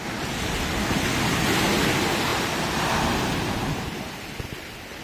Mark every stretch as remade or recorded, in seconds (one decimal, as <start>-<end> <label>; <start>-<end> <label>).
0.0-0.7 remade; 0.7-2.3 recorded; 2.3-3.5 remade; 3.5-5.0 recorded